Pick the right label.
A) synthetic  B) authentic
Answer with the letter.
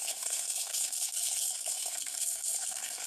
A